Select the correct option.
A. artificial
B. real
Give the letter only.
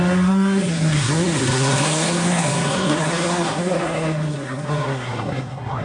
A